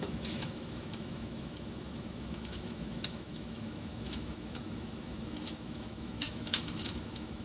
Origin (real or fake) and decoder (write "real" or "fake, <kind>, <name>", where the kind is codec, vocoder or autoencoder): fake, autoencoder, DAC-VAE